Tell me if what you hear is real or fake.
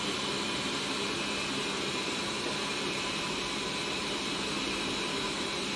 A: fake